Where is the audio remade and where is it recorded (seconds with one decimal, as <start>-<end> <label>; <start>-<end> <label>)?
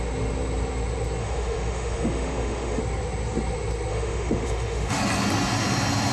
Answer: 0.0-1.2 recorded; 1.2-2.8 remade; 2.8-3.9 recorded; 3.9-5.0 remade; 5.0-6.1 recorded